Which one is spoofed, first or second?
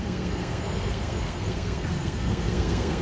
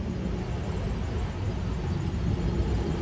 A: first